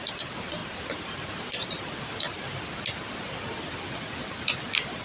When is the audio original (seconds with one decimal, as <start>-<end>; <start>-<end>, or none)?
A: 0.0-5.0